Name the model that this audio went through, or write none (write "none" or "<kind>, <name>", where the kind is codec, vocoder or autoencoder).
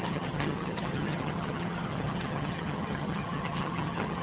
vocoder, HiFi-GAN